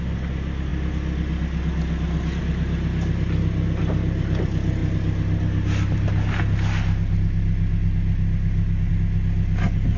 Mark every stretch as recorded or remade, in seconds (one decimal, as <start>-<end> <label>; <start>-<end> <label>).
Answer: 0.0-10.0 recorded